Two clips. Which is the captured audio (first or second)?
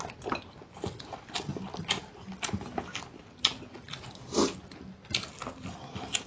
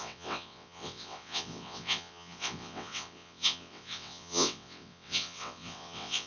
first